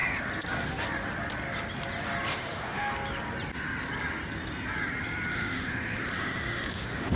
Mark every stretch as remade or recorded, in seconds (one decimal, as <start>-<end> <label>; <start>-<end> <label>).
0.0-2.3 recorded; 2.3-2.9 remade; 2.9-5.3 recorded; 5.3-7.2 remade